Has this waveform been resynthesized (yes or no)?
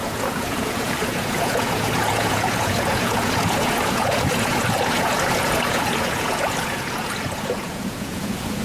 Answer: yes